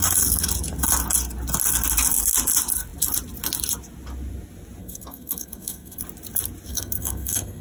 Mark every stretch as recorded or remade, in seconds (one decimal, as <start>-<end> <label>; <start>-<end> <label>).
0.0-4.8 recorded; 4.8-6.0 remade; 6.0-6.7 recorded; 6.7-7.6 remade